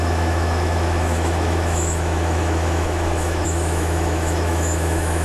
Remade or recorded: remade